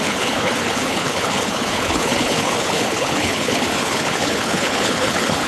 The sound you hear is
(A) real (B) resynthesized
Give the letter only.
B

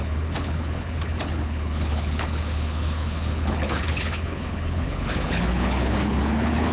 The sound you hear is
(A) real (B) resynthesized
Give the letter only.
B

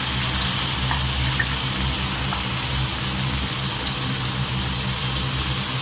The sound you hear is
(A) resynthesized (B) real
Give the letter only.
B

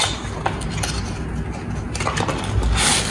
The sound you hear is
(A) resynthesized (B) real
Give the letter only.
B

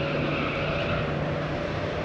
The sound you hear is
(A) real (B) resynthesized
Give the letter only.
A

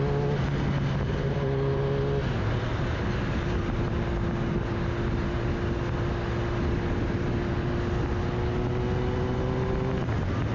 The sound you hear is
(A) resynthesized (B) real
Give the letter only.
B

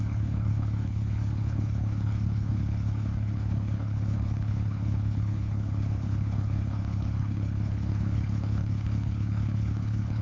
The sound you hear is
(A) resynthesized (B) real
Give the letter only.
A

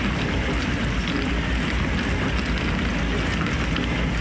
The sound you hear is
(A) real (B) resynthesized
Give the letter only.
A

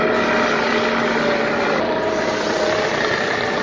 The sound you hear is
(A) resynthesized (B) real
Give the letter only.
B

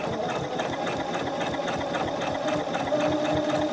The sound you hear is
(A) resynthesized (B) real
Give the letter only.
B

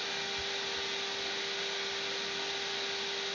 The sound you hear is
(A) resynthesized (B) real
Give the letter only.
B